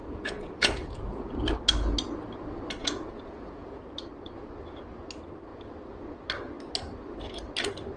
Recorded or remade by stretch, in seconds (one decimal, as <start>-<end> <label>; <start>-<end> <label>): 0.0-1.3 remade; 1.3-2.8 recorded; 2.8-3.8 remade; 3.8-8.0 recorded